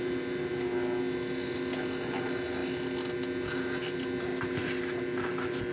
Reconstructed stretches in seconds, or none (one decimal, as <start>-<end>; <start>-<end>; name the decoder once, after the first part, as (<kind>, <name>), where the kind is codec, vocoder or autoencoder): none